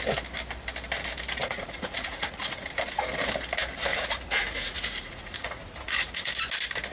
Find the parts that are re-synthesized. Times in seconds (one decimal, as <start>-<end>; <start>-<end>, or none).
1.4-2.7; 3.9-6.3